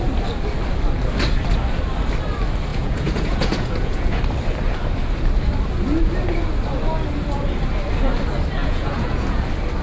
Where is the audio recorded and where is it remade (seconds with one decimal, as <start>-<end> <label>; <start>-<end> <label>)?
0.0-2.7 recorded; 2.7-4.2 remade; 4.2-8.6 recorded; 8.6-9.4 remade; 9.4-9.8 recorded